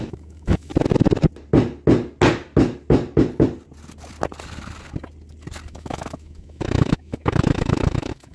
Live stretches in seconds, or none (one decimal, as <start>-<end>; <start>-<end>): 0.7-5.7